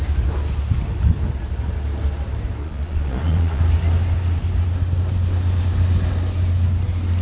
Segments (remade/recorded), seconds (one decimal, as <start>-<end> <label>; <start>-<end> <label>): 0.0-2.6 recorded; 2.6-3.6 remade; 3.6-7.2 recorded